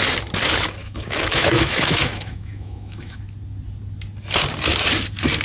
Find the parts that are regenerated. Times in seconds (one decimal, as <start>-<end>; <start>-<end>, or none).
0.8-3.2